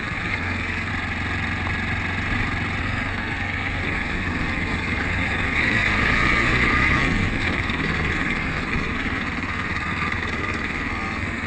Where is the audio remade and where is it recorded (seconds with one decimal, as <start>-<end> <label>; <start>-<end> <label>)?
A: 0.0-0.9 remade; 0.9-2.8 recorded; 2.8-11.5 remade